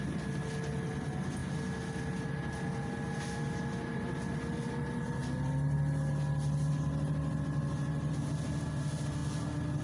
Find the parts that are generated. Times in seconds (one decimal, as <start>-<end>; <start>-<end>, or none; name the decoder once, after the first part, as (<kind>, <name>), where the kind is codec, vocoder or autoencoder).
none